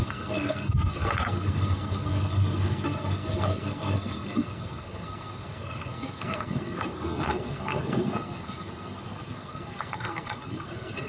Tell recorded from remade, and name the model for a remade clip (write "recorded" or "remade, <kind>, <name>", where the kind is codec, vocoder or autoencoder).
remade, codec, SNAC